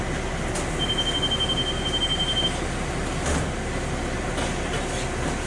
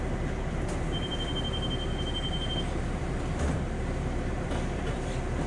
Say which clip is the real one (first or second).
first